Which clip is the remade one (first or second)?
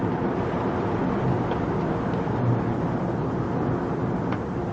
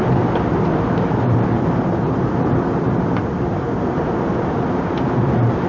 second